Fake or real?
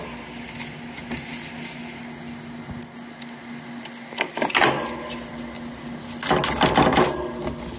real